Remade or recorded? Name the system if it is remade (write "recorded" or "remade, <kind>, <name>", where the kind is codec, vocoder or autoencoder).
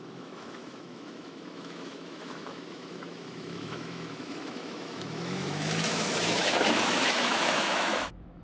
remade, autoencoder, DAC-VAE